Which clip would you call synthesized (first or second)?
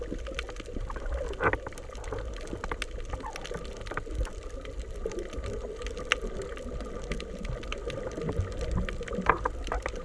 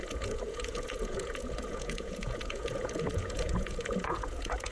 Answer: second